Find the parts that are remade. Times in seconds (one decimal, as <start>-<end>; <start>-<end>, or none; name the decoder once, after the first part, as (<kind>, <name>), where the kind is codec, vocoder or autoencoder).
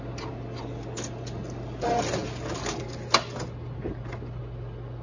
none